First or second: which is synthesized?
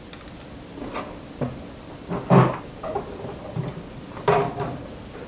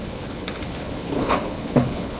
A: second